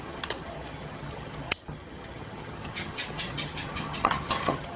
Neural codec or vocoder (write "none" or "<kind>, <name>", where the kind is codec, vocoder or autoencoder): vocoder, HiFi-GAN